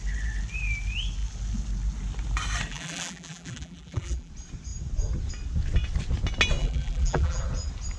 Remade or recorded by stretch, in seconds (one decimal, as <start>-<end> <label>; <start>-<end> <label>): 0.0-2.7 recorded; 2.7-4.3 remade; 4.3-6.6 recorded; 6.6-7.4 remade; 7.4-8.0 recorded

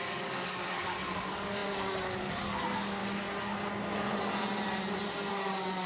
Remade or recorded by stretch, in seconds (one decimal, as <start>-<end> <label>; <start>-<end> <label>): 0.0-3.0 remade; 3.0-5.3 recorded; 5.3-5.9 remade